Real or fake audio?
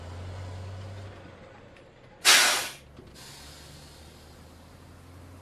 real